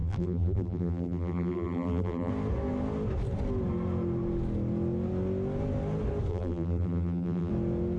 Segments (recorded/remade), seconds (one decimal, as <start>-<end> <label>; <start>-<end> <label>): 0.0-2.3 remade; 2.3-6.3 recorded; 6.3-7.5 remade; 7.5-8.0 recorded